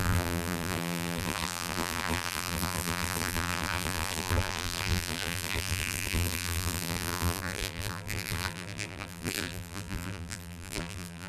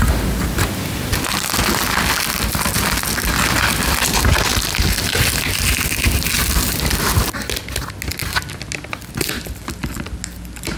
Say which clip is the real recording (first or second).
second